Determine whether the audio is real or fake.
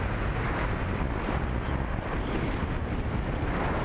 real